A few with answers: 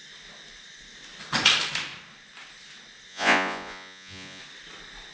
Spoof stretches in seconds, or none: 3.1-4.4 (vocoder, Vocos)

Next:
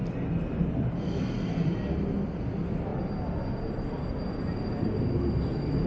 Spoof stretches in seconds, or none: none

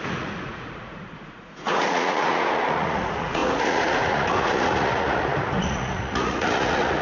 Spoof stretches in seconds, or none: 0.0-7.0 (vocoder, Vocos)

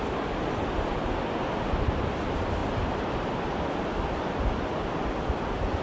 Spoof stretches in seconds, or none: none

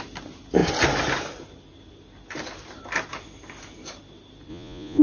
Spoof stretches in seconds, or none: 4.5-5.0 (vocoder, Vocos)